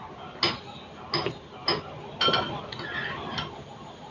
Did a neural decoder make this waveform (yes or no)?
no